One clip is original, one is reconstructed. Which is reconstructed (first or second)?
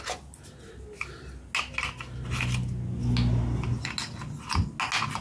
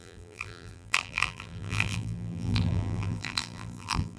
second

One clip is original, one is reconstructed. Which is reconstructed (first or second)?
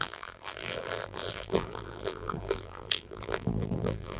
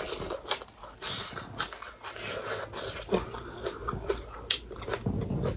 first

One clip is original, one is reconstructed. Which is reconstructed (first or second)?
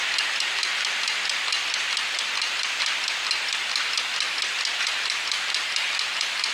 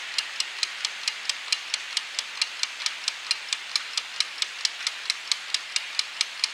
first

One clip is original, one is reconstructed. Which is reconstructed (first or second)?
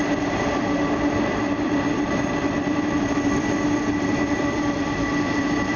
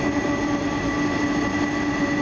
first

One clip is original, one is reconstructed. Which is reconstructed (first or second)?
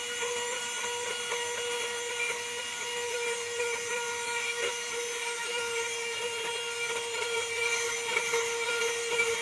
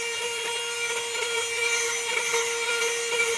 first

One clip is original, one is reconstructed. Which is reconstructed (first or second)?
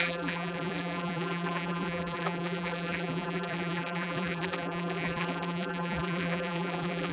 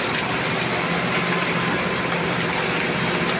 first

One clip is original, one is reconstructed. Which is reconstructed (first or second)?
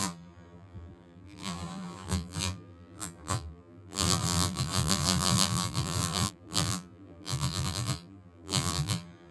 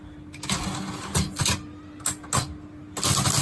first